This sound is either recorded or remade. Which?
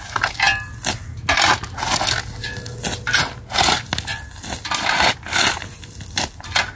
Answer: recorded